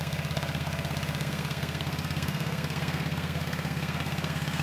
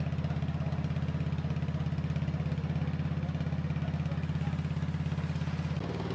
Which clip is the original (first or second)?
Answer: second